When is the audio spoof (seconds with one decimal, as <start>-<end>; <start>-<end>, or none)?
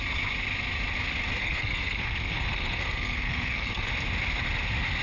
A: 1.4-3.9